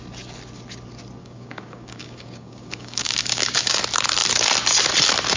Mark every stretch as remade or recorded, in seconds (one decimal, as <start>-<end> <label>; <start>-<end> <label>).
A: 0.0-1.2 recorded; 1.2-3.8 remade; 3.8-5.4 recorded